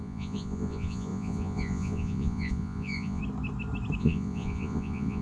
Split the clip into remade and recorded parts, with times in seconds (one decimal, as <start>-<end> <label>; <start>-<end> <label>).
0.0-3.2 remade; 3.2-4.0 recorded; 4.0-5.2 remade